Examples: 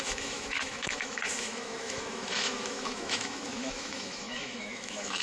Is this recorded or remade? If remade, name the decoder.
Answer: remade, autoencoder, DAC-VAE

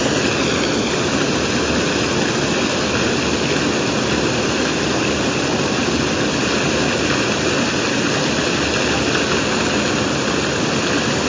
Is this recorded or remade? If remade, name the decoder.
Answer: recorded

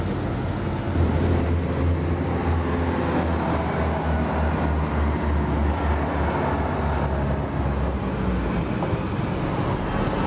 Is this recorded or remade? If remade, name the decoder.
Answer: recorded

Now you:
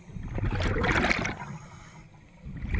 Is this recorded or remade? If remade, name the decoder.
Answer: recorded